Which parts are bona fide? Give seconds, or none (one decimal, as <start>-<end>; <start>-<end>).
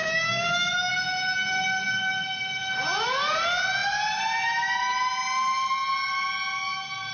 0.9-7.1